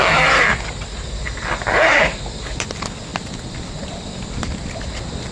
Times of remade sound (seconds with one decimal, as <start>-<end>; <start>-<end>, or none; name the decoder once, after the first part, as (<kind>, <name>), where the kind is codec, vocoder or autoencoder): 0.5-2.5 (vocoder, BigVGAN v2)